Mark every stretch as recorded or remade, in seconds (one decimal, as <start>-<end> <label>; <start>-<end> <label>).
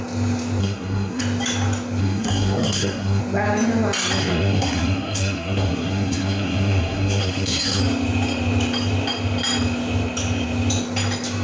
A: 0.0-0.6 recorded; 0.6-1.2 remade; 1.2-2.0 recorded; 2.0-3.2 remade; 3.2-4.2 recorded; 4.2-7.8 remade; 7.8-11.4 recorded